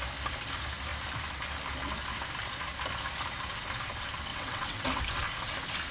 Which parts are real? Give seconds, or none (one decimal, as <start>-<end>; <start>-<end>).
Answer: 0.0-4.3; 5.0-5.9